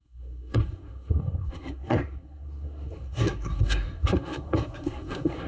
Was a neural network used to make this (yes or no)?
yes